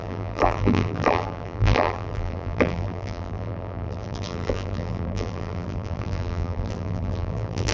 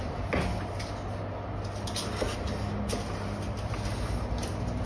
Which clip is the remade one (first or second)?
first